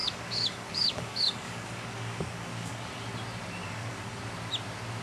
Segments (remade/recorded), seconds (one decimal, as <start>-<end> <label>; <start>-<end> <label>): 0.0-2.9 remade; 2.9-3.6 recorded; 3.6-4.2 remade; 4.2-5.0 recorded